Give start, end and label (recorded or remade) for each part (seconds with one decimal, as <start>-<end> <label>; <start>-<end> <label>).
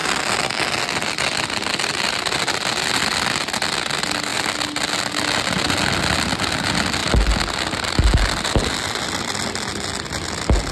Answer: 0.0-10.7 recorded